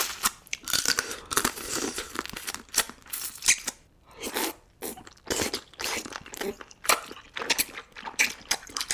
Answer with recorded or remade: remade